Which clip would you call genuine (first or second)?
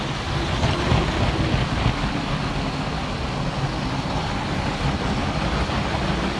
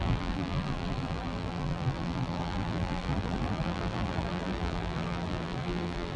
first